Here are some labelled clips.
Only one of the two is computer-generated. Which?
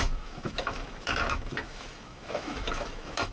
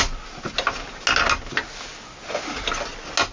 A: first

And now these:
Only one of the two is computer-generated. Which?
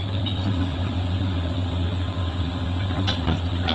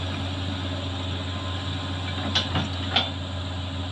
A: first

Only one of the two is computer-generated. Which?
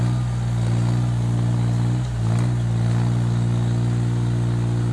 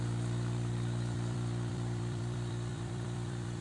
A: second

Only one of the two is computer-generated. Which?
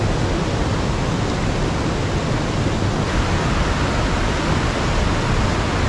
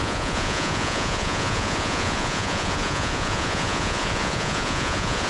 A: second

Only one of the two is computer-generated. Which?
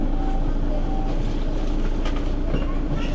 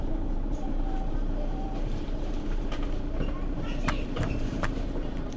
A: second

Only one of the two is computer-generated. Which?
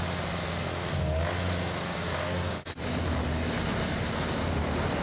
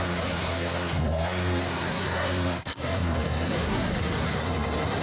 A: second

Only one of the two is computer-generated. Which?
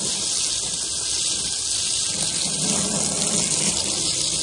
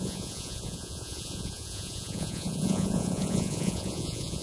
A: second